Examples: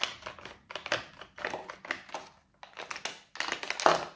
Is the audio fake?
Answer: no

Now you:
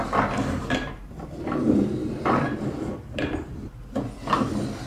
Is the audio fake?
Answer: no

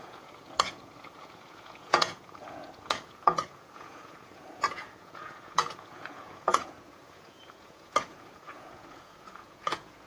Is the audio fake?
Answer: yes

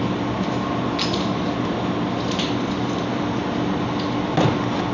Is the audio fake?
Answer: no